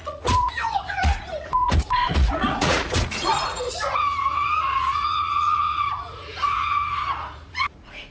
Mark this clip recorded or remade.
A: remade